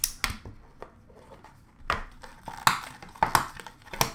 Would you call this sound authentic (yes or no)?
yes